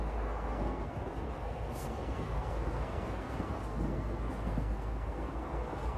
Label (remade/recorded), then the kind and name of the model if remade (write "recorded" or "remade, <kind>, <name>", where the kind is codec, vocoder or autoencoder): remade, codec, SNAC